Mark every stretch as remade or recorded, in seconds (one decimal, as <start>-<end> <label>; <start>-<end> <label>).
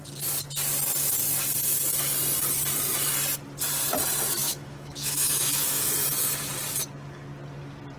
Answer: 0.0-4.4 recorded; 4.4-5.9 remade; 5.9-8.0 recorded